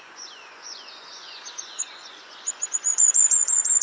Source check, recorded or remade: remade